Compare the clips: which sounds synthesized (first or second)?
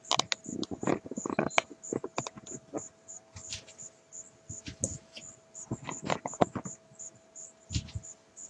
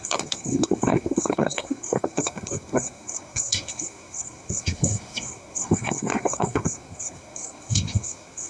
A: second